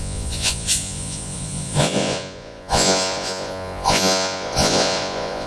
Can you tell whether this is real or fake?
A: fake